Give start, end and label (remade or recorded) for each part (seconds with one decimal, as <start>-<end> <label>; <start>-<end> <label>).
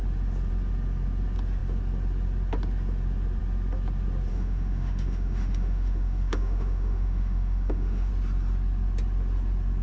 0.0-4.3 recorded; 4.3-8.1 remade; 8.1-9.8 recorded